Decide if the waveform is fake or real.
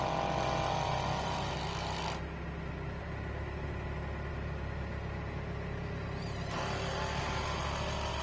real